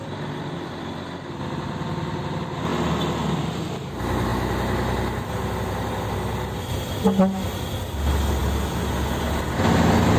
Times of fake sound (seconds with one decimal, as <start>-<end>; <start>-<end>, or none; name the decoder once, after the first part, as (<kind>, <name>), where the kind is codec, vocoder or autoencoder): none